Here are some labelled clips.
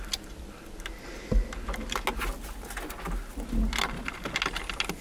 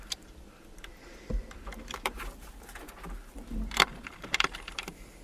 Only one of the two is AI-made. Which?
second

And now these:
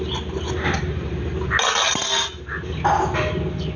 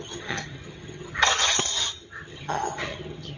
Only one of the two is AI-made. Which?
second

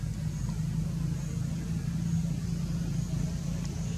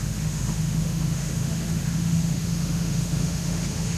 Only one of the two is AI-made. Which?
second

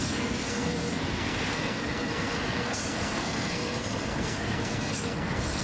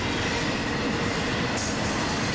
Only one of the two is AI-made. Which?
first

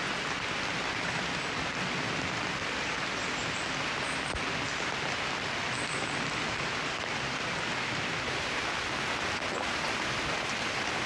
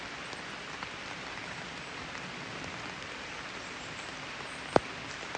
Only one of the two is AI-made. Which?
second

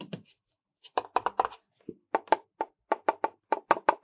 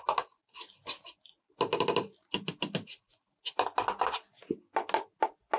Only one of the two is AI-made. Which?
first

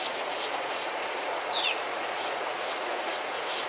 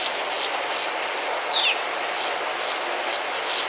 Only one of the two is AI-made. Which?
first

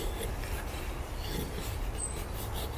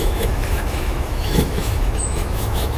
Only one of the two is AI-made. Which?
second